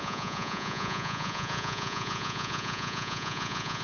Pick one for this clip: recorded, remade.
remade